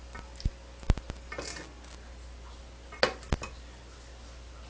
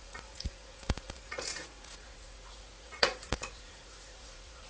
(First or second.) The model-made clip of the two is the second